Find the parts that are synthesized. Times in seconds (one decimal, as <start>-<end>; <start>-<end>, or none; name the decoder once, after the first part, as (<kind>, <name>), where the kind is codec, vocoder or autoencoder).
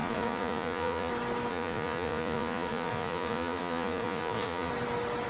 0.0-1.1 (vocoder, Vocos); 1.5-4.7